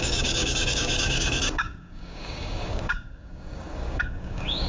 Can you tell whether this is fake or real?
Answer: fake